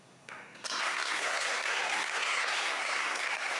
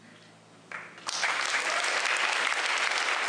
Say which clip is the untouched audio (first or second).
second